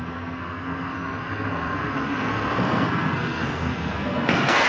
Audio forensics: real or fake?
fake